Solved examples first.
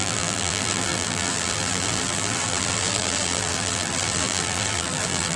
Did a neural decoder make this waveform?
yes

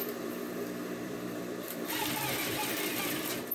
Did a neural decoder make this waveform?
yes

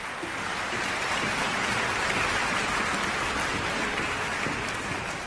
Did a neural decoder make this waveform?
no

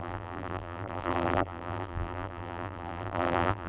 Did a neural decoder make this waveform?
yes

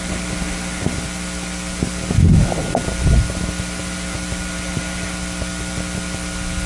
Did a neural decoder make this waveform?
no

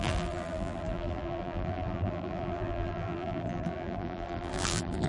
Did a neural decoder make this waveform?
yes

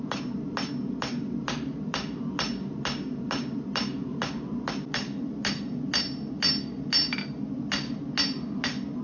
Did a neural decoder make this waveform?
no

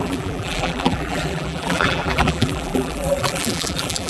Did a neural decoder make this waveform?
yes